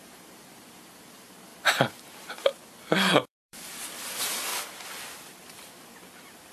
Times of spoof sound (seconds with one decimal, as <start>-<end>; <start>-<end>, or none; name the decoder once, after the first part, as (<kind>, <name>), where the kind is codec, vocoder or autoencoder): 1.5-2.4 (vocoder, BigVGAN v2); 3.1-3.6; 4.5-6.5